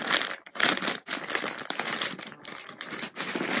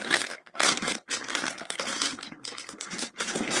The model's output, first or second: second